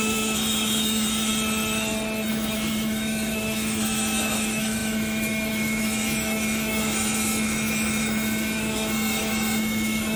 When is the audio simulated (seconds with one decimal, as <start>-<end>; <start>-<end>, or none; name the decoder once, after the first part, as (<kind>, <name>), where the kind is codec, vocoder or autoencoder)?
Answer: 0.0-1.3 (autoencoder, DAC-VAE); 2.3-10.2